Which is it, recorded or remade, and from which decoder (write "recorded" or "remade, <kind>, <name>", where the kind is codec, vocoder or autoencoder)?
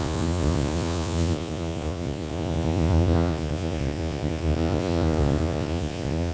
remade, vocoder, Vocos